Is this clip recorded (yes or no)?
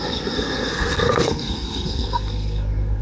no